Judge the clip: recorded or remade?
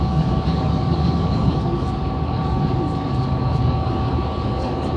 remade